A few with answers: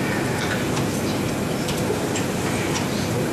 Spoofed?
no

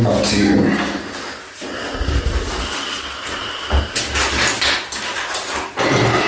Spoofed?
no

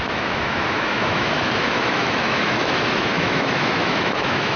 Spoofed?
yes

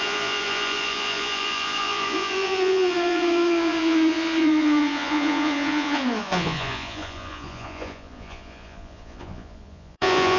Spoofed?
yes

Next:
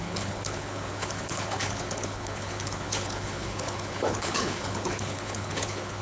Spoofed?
yes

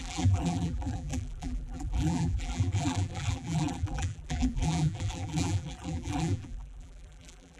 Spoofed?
yes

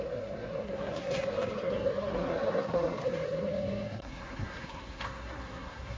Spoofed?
yes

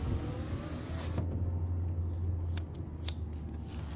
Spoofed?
no